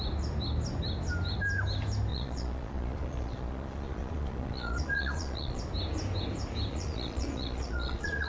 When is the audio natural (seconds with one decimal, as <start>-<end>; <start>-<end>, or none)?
0.0-2.1; 5.6-6.7